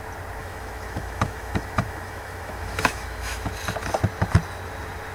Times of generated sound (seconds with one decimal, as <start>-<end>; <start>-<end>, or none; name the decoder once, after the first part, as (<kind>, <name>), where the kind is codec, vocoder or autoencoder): 0.4-3.5 (autoencoder, DAC-VAE)